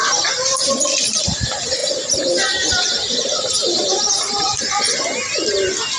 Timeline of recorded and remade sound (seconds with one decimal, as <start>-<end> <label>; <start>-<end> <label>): 0.0-1.8 recorded; 1.8-4.3 remade; 4.3-6.0 recorded